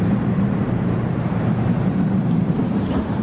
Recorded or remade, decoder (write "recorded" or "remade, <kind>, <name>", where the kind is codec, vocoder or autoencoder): remade, vocoder, BigVGAN v2